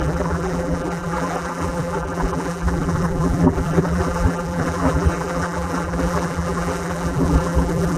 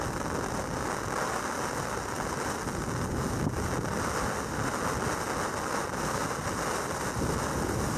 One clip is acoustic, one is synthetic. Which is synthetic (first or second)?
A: first